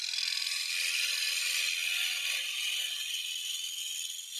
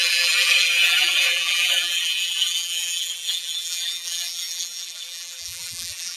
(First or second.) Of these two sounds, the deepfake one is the second